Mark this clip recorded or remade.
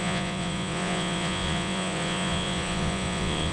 remade